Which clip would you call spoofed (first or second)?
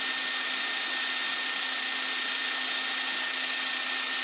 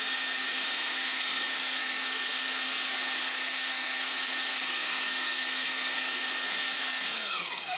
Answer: second